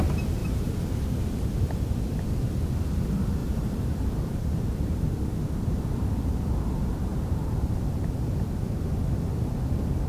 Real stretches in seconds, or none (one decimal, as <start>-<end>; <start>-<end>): 0.0-0.4; 1.8-3.4; 5.1-7.1; 8.0-10.1